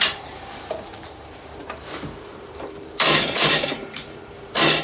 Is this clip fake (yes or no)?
yes